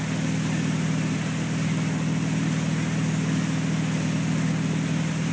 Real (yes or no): yes